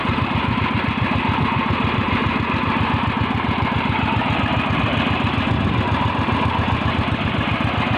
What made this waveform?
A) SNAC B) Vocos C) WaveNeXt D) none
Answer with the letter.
D